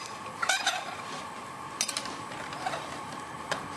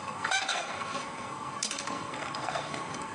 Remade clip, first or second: second